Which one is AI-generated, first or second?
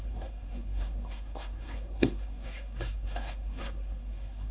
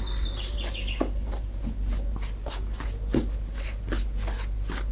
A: first